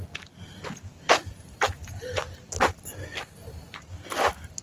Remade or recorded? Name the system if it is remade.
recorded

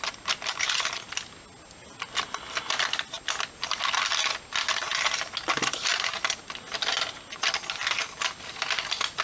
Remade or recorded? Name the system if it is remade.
recorded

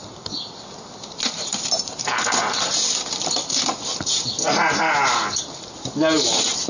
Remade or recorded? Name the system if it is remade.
recorded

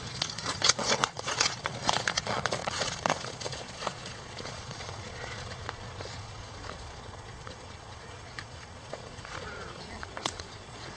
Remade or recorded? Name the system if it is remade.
remade, vocoder, Vocos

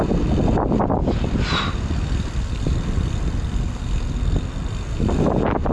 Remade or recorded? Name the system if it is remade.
recorded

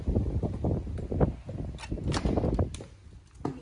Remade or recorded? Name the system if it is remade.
recorded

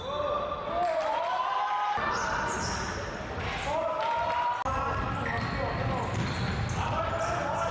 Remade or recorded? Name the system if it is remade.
recorded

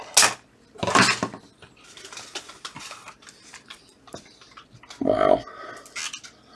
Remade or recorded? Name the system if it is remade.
recorded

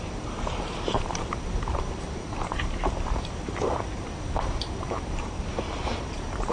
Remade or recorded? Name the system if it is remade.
remade, vocoder, BigVGAN v2